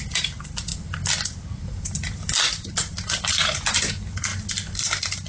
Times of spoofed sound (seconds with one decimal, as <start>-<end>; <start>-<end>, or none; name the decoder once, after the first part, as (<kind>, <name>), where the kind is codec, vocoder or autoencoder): none